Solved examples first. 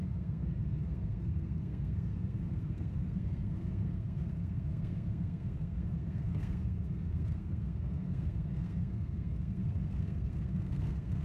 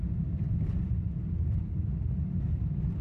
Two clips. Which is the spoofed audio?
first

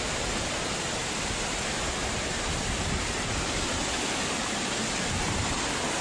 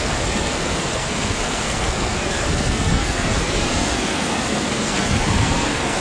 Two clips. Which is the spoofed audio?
second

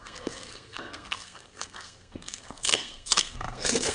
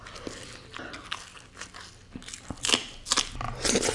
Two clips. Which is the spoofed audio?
first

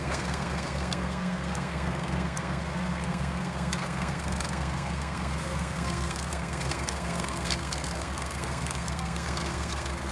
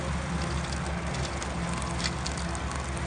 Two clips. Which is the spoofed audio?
first